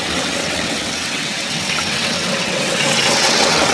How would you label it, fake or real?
fake